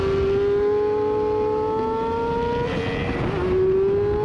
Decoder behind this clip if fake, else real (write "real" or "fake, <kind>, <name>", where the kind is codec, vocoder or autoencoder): real